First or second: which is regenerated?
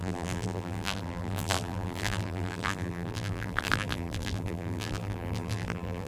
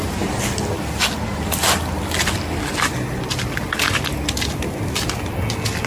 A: first